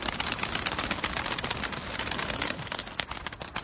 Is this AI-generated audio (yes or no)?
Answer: no